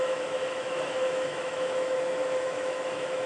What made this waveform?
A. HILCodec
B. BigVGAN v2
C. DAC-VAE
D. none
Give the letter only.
C